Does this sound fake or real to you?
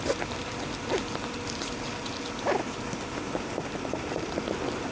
real